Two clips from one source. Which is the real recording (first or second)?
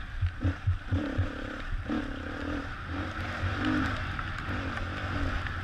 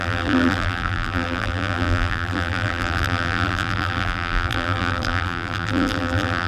first